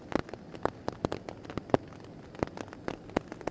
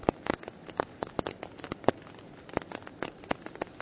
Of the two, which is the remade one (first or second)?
second